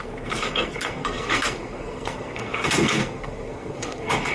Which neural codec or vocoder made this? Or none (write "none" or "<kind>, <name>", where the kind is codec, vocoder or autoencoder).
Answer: codec, SNAC